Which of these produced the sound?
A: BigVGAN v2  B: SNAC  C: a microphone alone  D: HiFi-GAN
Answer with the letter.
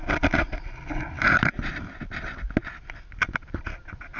C